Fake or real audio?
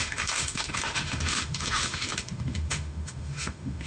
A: fake